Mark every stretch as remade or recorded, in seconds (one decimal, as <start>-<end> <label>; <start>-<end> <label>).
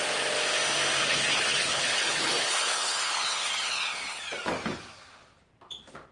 0.0-1.0 recorded; 1.0-4.2 remade; 4.2-6.1 recorded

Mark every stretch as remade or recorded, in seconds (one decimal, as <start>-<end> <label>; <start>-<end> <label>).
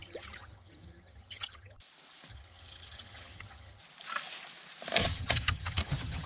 0.0-1.8 remade; 1.8-2.3 recorded; 2.3-3.8 remade; 3.8-5.0 recorded; 5.0-6.3 remade